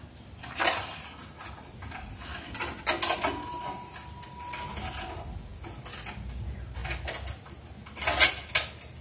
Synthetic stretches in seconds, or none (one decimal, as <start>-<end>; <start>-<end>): none